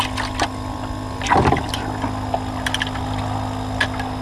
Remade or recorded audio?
recorded